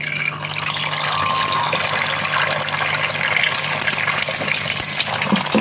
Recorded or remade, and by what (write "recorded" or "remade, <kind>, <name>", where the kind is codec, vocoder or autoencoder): recorded